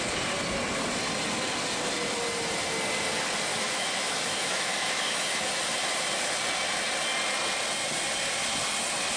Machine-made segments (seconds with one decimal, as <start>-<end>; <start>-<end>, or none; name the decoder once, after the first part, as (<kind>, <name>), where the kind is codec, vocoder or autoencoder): 3.5-5.5 (autoencoder, DAC-VAE)